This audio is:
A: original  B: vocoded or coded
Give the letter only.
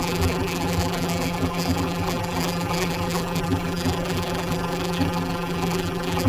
B